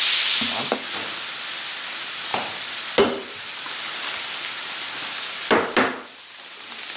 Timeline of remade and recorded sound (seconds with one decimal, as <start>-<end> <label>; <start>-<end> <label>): 0.0-7.0 recorded